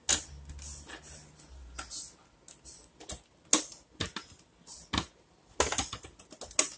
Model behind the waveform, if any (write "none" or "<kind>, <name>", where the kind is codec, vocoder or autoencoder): none